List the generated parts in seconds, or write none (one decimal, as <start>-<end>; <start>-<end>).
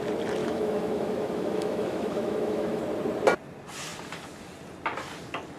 0.4-2.8